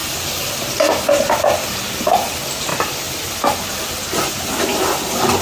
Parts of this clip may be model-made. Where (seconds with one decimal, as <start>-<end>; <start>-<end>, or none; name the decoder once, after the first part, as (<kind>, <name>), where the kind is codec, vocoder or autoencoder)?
0.0-2.7 (vocoder, BigVGAN v2)